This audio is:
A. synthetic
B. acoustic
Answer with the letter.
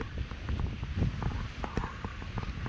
B